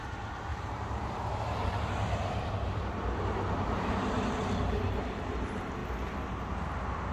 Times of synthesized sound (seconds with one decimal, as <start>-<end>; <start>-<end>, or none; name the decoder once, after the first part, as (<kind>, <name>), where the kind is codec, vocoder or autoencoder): 0.5-3.9 (vocoder, BigVGAN v2)

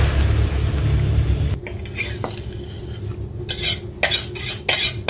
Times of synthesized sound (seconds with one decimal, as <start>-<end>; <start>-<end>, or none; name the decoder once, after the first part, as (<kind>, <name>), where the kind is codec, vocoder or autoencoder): none

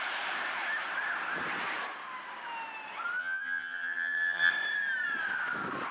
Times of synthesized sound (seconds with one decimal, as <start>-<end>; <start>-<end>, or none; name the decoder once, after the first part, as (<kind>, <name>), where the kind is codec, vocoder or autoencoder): 3.2-4.5 (vocoder, HiFi-GAN)

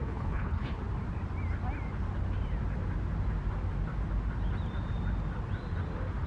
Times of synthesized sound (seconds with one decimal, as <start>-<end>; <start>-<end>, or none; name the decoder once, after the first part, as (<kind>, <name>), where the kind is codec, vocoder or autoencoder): 0.0-0.8 (codec, HILCodec)

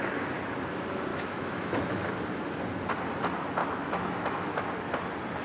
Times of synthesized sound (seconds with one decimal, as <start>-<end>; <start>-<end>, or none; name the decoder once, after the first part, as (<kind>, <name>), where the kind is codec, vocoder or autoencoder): 1.1-2.0 (autoencoder, DAC-VAE); 3.6-4.5

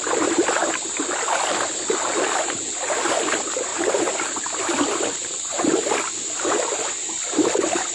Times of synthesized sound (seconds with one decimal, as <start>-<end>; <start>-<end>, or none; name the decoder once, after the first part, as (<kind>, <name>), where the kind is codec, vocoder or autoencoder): none

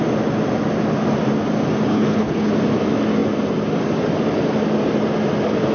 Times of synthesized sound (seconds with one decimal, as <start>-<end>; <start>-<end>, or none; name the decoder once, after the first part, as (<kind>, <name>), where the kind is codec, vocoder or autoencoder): 1.9-2.5 (codec, HILCodec)

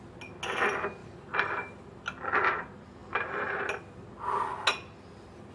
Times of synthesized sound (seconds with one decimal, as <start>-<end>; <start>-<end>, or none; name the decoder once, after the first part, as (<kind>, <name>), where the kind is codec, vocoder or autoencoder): 1.0-2.0 (vocoder, BigVGAN v2); 3.0-3.6